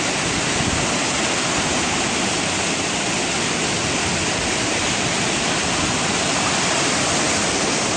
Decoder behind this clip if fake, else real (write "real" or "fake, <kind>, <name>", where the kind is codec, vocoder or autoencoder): real